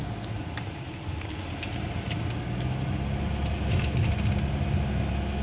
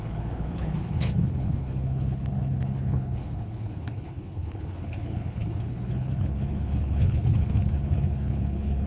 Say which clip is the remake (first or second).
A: second